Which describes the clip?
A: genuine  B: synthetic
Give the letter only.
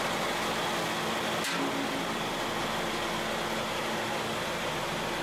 A